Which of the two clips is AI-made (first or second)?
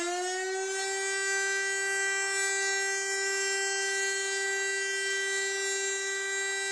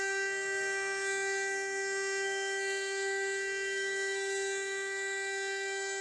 second